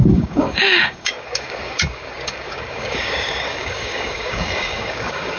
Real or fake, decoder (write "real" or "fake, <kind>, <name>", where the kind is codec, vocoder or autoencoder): fake, codec, DAC